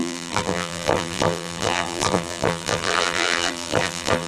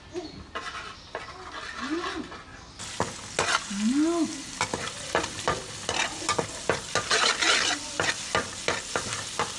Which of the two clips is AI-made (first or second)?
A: first